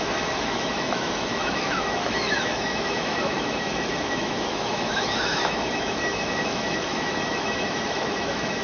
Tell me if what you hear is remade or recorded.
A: remade